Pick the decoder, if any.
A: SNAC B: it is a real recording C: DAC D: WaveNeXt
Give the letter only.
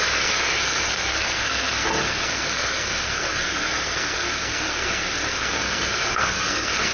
A